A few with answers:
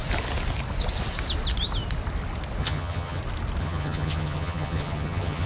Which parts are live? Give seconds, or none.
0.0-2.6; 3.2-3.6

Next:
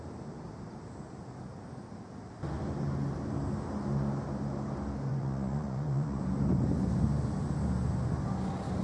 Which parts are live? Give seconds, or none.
0.0-5.1; 6.2-8.8

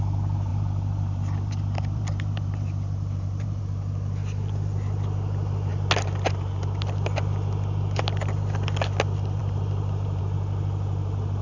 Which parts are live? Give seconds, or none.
0.0-0.5; 3.6-9.4; 10.2-11.4

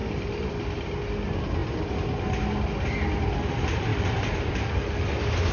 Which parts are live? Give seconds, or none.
0.5-3.9; 4.5-5.5

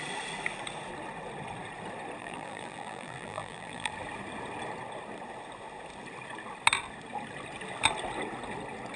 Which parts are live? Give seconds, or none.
0.0-2.2; 3.9-9.0

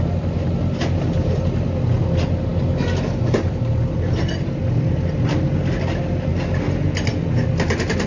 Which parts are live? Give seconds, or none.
0.0-8.1

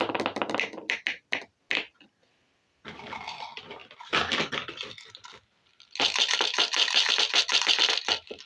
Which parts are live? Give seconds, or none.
0.0-8.5